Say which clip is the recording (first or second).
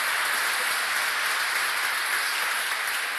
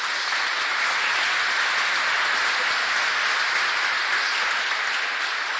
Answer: second